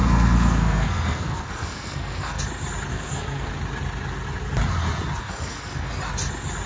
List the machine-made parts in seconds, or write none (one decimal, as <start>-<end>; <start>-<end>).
0.0-2.4; 2.9-3.5; 5.2-5.9